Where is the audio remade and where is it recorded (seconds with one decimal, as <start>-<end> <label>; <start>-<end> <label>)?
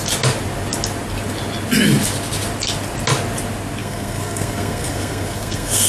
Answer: 0.0-3.8 recorded; 3.8-5.9 remade